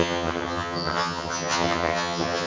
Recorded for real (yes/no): no